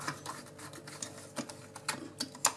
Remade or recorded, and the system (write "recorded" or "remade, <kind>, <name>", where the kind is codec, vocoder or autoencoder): recorded